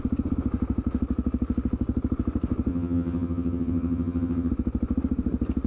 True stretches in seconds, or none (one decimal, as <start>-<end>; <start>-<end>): 0.0-2.7; 4.5-5.7